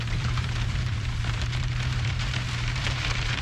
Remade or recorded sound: remade